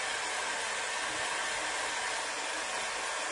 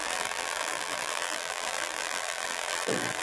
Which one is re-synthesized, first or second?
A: second